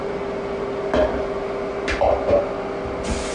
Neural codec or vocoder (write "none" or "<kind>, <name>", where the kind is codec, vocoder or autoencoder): none